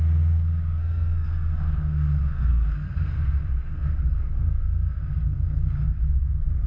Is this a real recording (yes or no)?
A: no